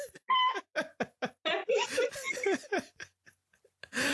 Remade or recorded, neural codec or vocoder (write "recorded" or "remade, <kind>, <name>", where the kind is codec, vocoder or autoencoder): recorded